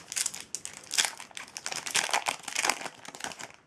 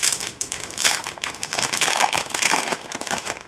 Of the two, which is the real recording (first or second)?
first